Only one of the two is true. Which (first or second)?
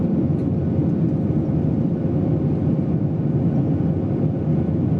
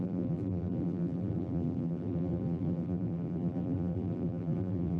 first